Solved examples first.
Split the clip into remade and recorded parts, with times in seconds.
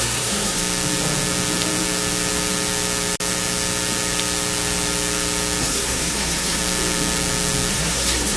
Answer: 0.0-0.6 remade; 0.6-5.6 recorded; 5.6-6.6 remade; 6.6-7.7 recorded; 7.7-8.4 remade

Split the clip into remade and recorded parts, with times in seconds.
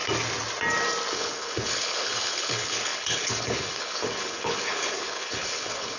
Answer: 0.0-1.1 recorded; 1.1-6.0 remade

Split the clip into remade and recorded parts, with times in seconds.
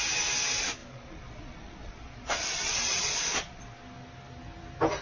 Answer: 0.0-0.8 recorded; 0.8-3.6 remade; 3.6-5.0 recorded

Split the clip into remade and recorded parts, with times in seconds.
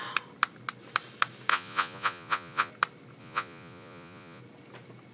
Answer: 0.0-1.5 recorded; 1.5-2.7 remade; 2.7-3.2 recorded; 3.2-4.4 remade; 4.4-5.1 recorded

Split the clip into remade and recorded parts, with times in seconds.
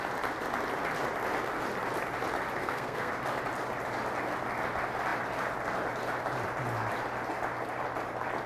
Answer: 0.0-2.6 recorded; 2.6-3.1 remade; 3.1-8.5 recorded